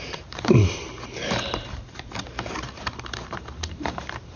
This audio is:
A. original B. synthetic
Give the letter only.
B